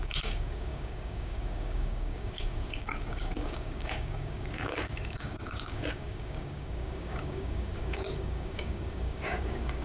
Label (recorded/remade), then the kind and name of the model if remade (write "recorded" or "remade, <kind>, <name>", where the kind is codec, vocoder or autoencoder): remade, codec, DAC